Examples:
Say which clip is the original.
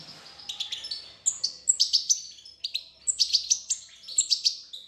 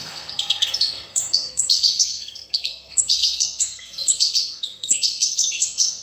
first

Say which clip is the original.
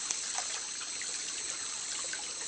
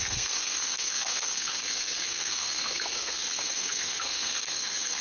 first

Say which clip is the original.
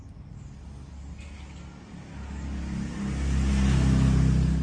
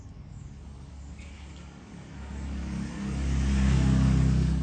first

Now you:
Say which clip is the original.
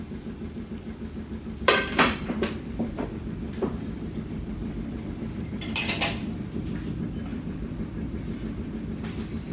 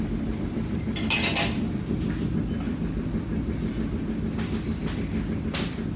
second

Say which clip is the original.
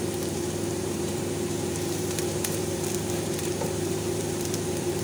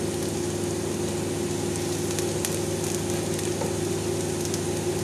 second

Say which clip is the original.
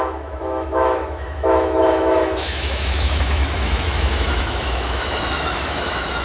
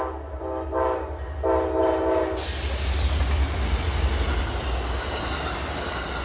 second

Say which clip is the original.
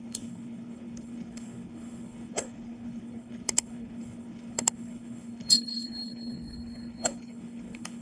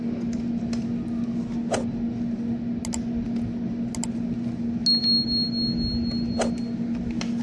second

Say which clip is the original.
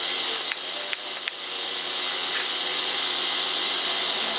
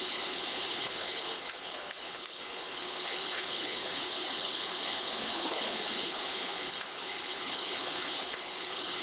first